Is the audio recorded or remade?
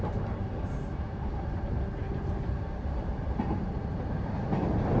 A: remade